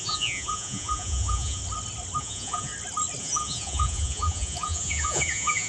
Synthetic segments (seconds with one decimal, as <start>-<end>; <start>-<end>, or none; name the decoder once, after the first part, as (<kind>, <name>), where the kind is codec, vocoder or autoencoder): 0.0-1.6 (vocoder, Vocos); 2.2-2.7; 3.2-5.7